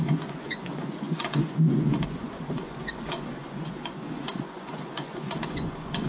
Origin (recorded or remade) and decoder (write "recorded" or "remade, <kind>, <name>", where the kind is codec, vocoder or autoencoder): remade, vocoder, Vocos